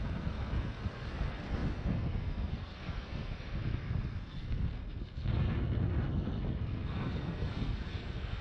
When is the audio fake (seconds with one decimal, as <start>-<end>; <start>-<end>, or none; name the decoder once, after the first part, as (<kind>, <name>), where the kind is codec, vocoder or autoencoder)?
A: 0.0-8.4 (codec, SNAC)